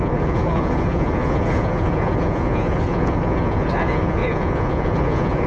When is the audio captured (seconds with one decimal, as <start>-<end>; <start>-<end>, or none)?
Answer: none

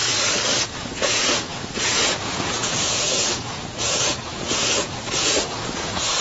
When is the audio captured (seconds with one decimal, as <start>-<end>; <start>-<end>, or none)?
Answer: 0.0-0.6

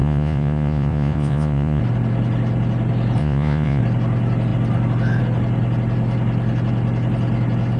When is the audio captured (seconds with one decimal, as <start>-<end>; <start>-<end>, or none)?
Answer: 1.8-3.2; 3.8-7.8

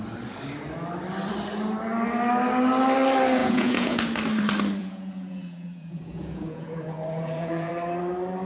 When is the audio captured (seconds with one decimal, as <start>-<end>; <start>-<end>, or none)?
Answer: 0.0-3.4; 4.0-4.8; 7.7-8.5

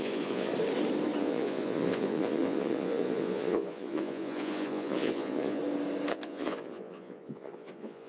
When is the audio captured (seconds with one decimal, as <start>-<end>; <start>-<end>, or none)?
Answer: 0.5-1.2; 5.6-6.1

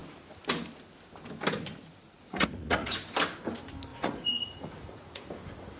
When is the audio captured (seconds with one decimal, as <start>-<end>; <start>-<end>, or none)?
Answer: 0.0-1.9; 3.0-3.9; 5.3-5.8

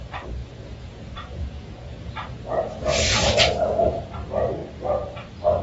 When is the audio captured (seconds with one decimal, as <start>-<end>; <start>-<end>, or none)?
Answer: 0.0-0.4; 2.7-3.1; 4.0-5.6

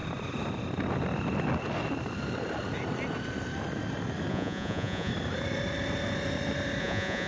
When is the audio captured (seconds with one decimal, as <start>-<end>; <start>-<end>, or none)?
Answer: 0.0-4.3; 5.1-6.8